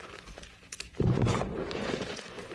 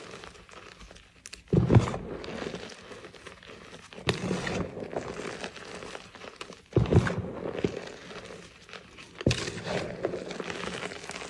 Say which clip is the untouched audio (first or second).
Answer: second